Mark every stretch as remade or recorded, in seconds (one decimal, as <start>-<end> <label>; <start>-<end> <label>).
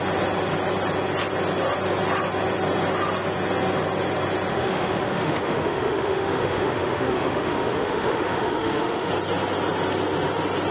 0.0-4.5 recorded; 4.5-9.1 remade; 9.1-10.7 recorded